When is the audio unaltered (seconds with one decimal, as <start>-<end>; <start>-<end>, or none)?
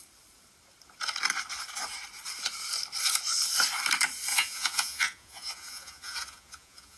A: 0.0-4.3